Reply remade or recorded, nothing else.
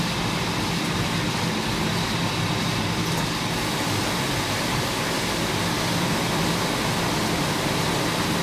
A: recorded